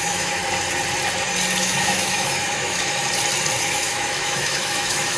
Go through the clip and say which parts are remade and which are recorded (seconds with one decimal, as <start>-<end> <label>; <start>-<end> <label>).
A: 0.0-0.4 remade; 0.4-1.6 recorded; 1.6-3.0 remade; 3.0-3.6 recorded; 3.6-5.2 remade